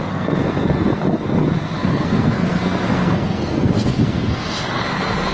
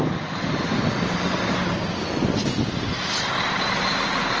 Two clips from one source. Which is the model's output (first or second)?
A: first